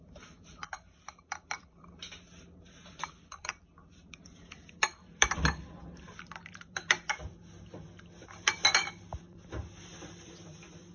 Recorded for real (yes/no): no